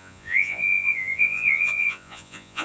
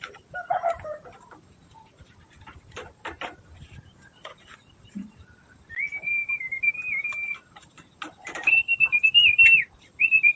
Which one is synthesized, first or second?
first